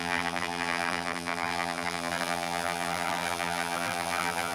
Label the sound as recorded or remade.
remade